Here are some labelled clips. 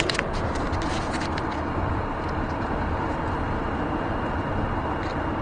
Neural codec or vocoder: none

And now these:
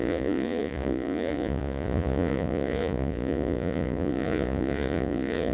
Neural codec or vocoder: vocoder, Vocos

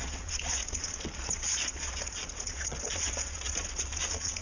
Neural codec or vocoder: vocoder, Vocos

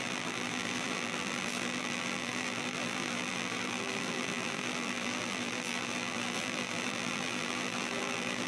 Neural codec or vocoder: vocoder, BigVGAN v2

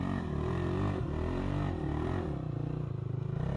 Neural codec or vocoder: none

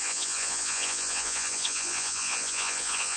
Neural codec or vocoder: vocoder, Vocos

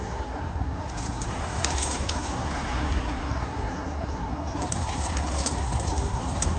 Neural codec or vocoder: codec, SNAC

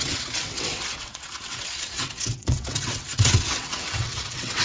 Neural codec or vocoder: vocoder, WaveNeXt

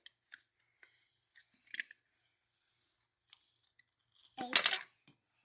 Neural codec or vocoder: none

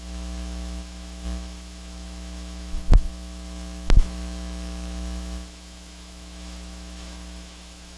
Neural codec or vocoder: autoencoder, DAC-VAE